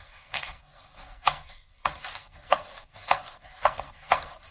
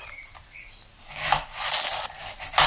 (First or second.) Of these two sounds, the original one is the second